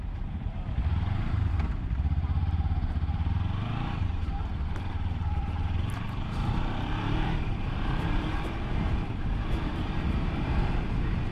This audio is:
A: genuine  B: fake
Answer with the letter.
B